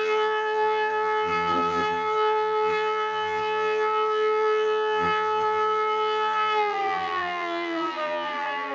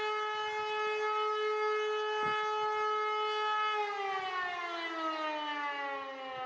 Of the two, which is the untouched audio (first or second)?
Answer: second